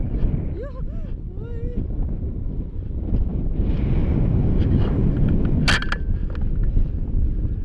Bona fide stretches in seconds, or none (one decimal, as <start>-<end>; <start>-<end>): 0.0-7.6